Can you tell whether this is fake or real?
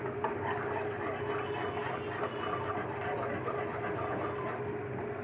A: real